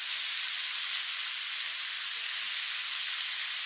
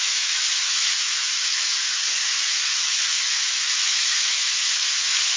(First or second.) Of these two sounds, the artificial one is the second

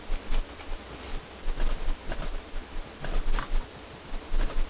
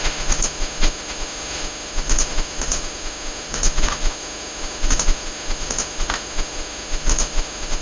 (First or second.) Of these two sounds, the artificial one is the second